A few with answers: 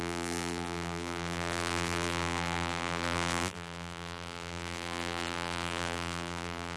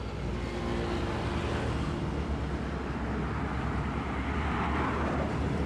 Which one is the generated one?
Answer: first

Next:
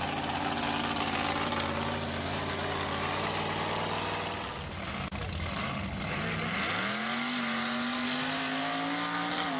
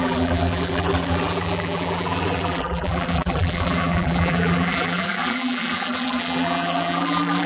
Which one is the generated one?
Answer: second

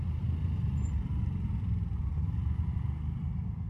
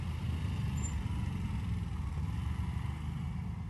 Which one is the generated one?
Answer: first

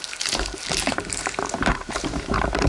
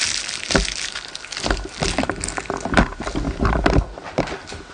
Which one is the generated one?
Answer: first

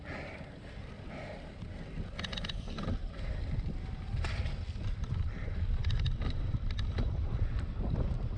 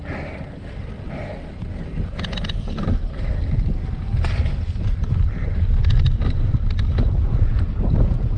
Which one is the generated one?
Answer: first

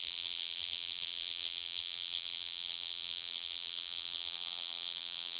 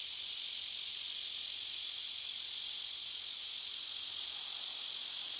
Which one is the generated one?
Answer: first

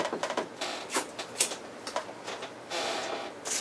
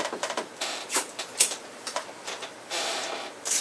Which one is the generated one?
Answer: second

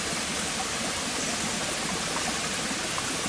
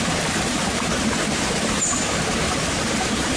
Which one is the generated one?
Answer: second